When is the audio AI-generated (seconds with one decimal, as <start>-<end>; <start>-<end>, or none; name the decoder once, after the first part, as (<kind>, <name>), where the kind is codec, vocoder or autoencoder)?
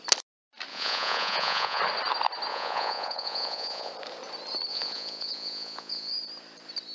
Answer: 0.7-1.8 (vocoder, Vocos); 2.5-3.9; 4.7-6.1